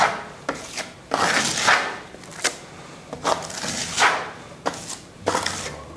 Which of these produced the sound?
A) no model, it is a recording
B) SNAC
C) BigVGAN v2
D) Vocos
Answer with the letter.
A